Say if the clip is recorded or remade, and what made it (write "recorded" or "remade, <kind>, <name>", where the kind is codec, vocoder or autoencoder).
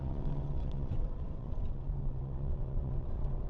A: remade, vocoder, WaveNeXt